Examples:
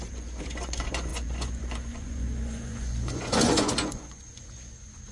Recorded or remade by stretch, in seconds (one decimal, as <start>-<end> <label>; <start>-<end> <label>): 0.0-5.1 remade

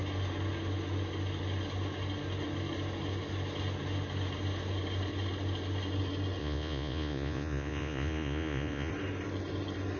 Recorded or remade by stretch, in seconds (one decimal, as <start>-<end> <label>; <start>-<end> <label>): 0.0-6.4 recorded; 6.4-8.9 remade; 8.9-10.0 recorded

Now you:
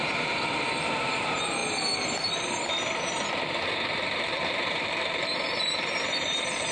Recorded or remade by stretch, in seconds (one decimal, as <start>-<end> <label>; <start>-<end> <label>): 0.0-1.6 remade; 1.6-4.0 recorded; 4.0-6.7 remade

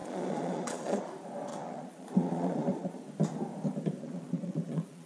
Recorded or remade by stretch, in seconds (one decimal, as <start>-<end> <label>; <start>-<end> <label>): 0.0-1.1 remade; 1.1-1.5 recorded; 1.5-3.0 remade; 3.0-4.0 recorded; 4.0-5.1 remade